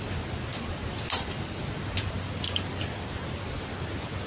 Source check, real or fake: real